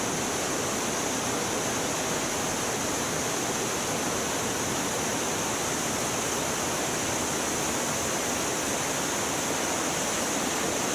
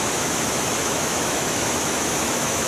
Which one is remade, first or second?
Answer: second